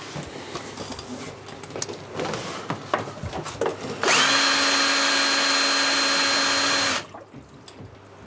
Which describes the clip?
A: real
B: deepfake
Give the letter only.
A